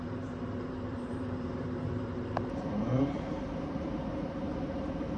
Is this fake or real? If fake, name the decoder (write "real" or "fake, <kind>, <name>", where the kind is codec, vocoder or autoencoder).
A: fake, vocoder, BigVGAN v2